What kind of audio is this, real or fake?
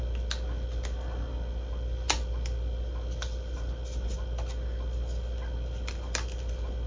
real